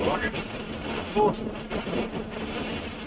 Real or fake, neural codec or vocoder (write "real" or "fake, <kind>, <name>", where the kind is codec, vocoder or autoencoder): real